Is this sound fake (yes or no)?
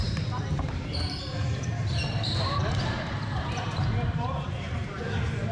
yes